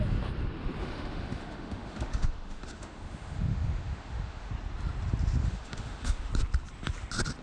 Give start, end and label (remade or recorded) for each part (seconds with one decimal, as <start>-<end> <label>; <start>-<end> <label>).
0.0-0.8 recorded; 0.8-4.5 remade; 4.5-5.4 recorded; 5.4-6.3 remade; 6.3-7.4 recorded